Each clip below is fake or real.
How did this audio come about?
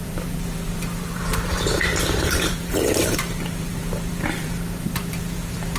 fake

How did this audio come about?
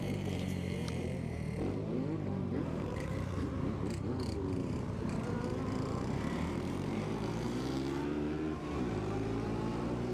fake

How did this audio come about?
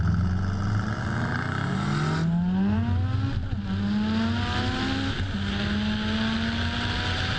real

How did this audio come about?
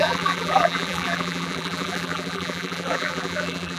fake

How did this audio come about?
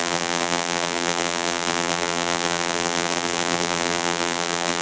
fake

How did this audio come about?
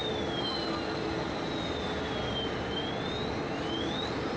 real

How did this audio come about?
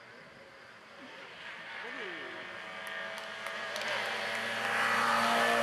real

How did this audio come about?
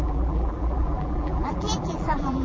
fake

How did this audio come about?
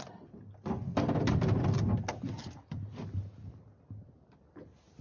fake